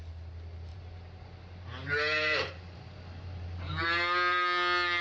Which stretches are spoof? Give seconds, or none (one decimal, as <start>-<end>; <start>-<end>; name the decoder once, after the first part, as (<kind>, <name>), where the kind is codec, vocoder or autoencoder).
0.7-3.7 (vocoder, BigVGAN v2)